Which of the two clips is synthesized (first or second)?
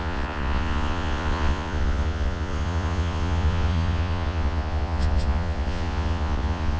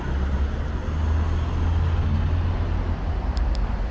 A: first